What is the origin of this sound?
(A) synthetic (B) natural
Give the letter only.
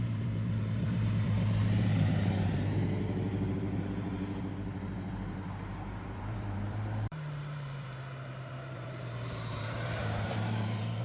A